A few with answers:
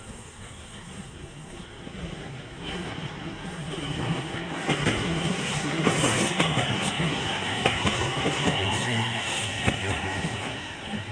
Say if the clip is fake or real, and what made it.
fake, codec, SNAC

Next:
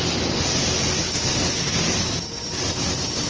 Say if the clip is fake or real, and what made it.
real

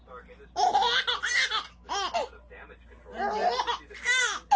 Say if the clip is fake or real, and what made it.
real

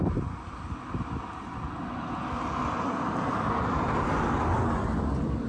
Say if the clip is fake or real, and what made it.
real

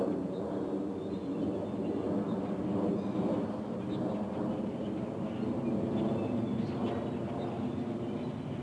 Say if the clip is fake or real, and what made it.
real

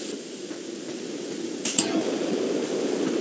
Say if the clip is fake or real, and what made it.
real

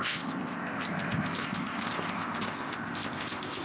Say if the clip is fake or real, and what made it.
fake, codec, ZipCodec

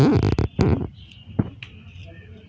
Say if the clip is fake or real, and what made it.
real